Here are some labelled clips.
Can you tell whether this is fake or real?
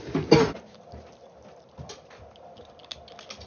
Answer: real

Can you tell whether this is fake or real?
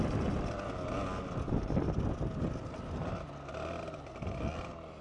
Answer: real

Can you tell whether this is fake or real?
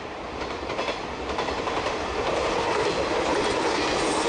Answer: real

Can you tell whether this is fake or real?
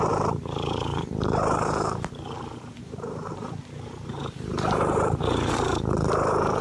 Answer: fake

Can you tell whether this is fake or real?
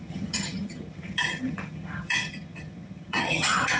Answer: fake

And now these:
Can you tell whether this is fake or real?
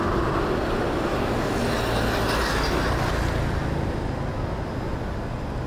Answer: real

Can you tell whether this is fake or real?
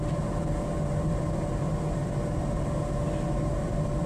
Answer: real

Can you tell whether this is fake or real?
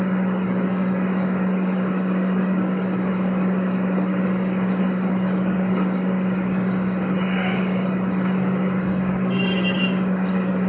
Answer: fake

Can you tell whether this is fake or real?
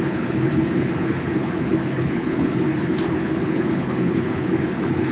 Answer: fake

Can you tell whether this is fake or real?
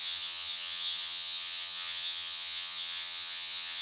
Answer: fake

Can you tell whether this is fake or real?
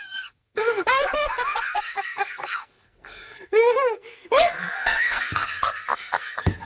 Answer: fake